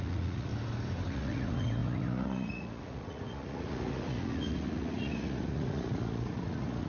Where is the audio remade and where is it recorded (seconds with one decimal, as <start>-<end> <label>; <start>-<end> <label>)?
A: 0.0-0.5 remade; 0.5-1.1 recorded; 1.1-6.9 remade